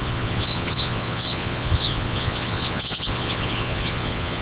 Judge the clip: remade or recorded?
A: remade